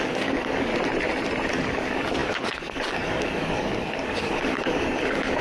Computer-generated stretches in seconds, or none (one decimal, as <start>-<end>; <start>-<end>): 0.0-0.7; 1.5-5.4